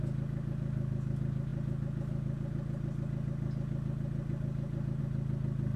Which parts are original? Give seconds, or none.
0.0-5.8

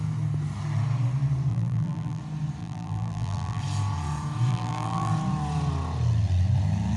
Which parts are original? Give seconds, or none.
0.0-1.5; 2.2-2.6; 3.6-4.5; 5.1-7.0

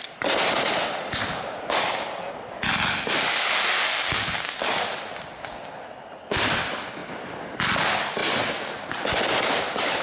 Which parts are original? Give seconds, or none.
0.0-10.0